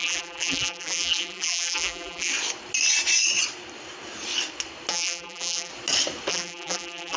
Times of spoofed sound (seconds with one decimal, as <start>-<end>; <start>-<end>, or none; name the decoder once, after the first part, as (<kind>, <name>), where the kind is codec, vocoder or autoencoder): 0.0-2.3 (vocoder, BigVGAN v2); 4.9-5.7; 6.3-7.2